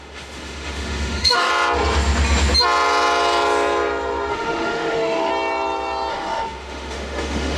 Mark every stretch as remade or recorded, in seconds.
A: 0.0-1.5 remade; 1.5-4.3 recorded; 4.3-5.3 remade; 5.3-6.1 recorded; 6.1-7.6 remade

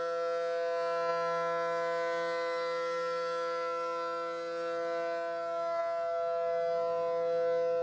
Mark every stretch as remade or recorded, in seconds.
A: 0.0-7.8 recorded

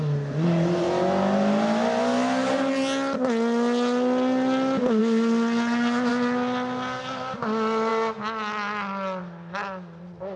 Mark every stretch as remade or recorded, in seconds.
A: 0.0-10.4 recorded

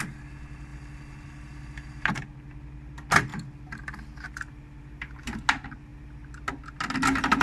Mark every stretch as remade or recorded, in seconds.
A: 0.0-0.7 recorded; 0.7-2.1 remade; 2.1-3.3 recorded; 3.3-5.2 remade; 5.2-7.4 recorded

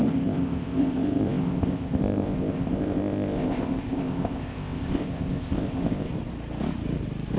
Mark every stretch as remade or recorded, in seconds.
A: 0.0-6.1 remade; 6.1-7.4 recorded